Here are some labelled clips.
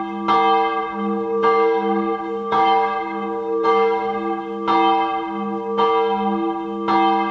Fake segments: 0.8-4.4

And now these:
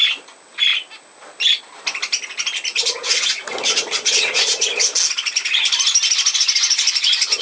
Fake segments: none

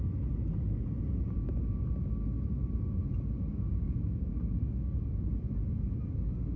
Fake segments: 3.5-5.3

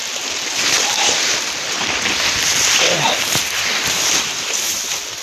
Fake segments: none

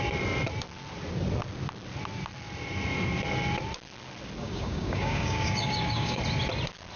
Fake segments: 4.4-6.2

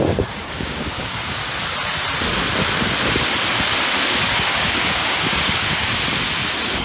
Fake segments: 0.0-1.4; 4.1-5.9